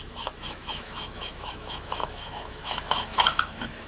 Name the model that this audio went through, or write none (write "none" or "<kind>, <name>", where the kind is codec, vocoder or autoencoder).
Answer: autoencoder, DAC-VAE